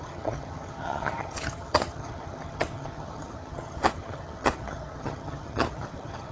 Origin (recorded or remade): remade